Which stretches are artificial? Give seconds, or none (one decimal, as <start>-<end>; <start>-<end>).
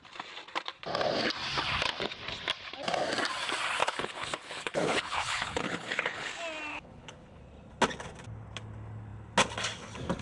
3.8-6.3; 6.7-7.4